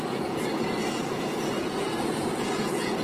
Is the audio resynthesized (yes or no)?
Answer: yes